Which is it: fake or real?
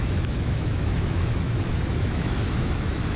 fake